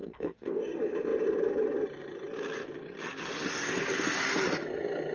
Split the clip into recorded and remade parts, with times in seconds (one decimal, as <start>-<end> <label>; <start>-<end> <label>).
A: 0.0-0.6 remade; 0.6-5.1 recorded